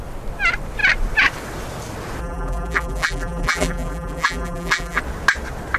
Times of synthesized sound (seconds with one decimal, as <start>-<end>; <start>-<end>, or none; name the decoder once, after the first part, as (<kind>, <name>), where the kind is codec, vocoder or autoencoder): 2.2-5.0 (vocoder, BigVGAN v2)